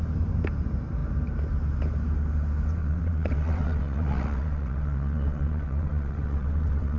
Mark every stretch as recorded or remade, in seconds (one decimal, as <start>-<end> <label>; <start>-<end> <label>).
0.0-2.8 recorded; 2.8-7.0 remade